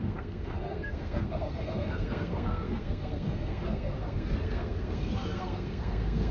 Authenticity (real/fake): fake